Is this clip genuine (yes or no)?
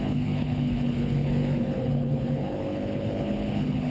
no